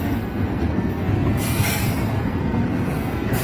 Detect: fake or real fake